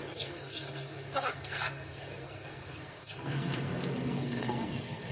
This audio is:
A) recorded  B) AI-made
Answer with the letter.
B